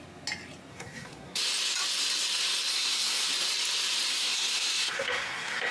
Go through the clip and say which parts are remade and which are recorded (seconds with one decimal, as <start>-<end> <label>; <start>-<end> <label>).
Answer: 0.0-0.7 recorded; 0.7-1.4 remade; 1.4-2.7 recorded; 2.7-3.3 remade; 3.3-4.1 recorded; 4.1-5.7 remade